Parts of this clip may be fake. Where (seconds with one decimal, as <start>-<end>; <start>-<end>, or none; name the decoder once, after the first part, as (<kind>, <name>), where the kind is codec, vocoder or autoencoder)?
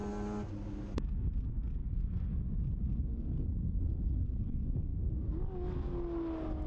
1.8-2.3 (codec, SNAC); 3.1-4.4